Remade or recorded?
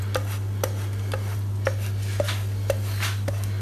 recorded